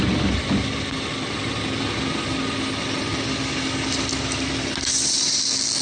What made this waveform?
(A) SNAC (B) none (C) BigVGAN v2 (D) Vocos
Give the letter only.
B